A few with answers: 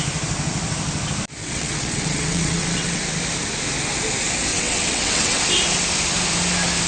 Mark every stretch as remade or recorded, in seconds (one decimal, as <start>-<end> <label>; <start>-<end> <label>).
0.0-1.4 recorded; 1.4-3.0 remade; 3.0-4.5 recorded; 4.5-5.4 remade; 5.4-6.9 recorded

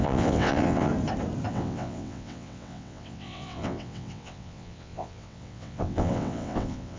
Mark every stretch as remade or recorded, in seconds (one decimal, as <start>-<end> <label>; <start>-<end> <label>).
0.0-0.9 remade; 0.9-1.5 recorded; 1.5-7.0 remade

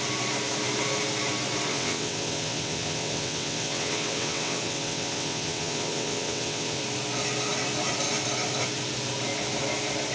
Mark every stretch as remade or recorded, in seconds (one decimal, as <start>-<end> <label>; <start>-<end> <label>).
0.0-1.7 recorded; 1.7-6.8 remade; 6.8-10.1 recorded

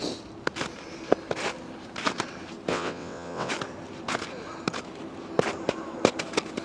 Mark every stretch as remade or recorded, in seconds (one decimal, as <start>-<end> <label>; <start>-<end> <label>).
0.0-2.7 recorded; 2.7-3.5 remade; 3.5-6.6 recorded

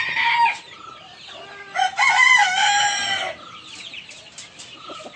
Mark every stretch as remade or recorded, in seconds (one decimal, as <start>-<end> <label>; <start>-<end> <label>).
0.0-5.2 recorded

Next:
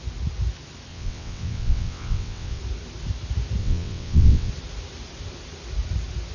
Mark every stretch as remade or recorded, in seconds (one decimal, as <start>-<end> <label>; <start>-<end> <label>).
0.0-0.9 recorded; 0.9-2.6 remade; 2.6-3.6 recorded; 3.6-4.5 remade; 4.5-6.3 recorded

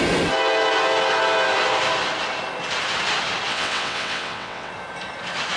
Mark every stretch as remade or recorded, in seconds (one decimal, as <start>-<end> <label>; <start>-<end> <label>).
0.0-3.5 recorded; 3.5-4.7 remade; 4.7-5.6 recorded